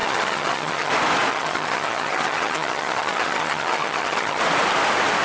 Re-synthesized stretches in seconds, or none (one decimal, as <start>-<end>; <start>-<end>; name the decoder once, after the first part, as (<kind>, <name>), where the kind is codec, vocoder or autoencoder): 0.0-0.9 (vocoder, HiFi-GAN); 1.3-4.4